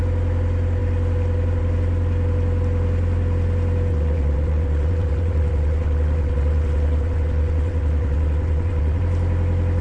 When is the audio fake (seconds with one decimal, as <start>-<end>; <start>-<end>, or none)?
3.9-9.0